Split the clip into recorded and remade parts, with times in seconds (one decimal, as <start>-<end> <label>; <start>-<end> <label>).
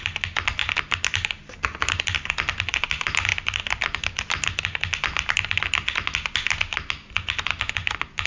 0.0-8.3 recorded